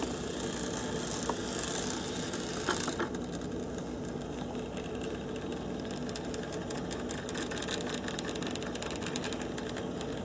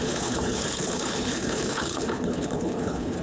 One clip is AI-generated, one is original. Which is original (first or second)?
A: first